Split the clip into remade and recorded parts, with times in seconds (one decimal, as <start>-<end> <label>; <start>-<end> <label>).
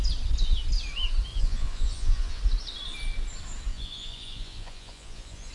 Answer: 0.0-1.3 recorded; 1.3-2.4 remade; 2.4-3.7 recorded; 3.7-5.5 remade